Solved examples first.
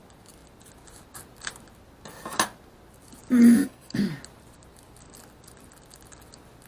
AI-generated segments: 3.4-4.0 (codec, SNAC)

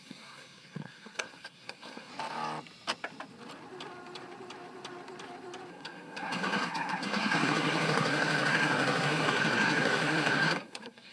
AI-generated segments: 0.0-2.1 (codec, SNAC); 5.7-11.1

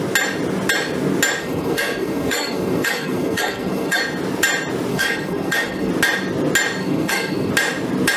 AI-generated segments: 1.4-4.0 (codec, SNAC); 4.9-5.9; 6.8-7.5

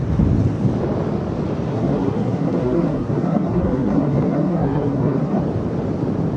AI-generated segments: 1.7-5.4 (codec, SNAC)

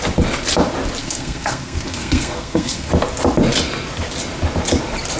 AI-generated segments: 1.0-2.9 (codec, SNAC)

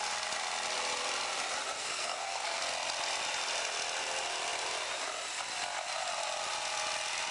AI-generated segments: 1.8-2.6 (codec, SNAC)

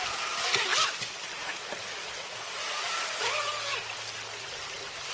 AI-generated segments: none

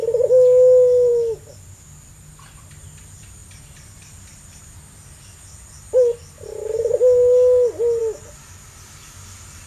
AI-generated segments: none